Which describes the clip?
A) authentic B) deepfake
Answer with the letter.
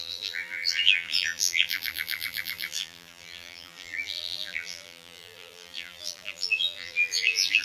B